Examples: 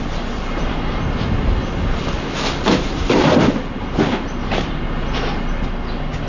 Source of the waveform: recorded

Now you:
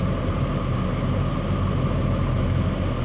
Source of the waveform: recorded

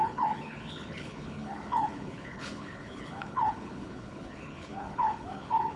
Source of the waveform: remade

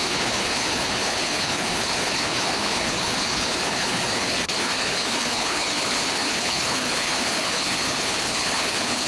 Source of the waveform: remade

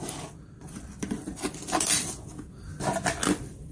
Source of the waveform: recorded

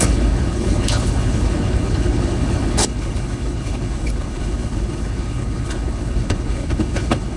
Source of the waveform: remade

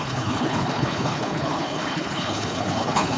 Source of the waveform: remade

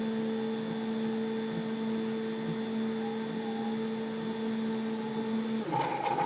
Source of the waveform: recorded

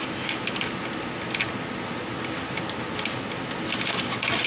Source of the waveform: recorded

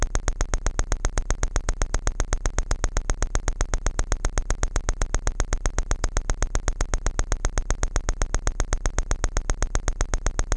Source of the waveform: recorded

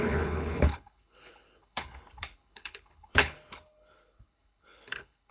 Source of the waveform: remade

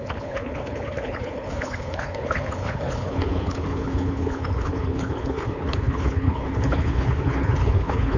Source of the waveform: remade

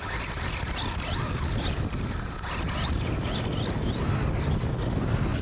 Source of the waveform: recorded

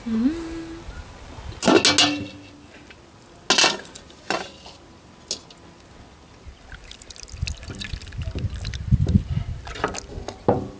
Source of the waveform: recorded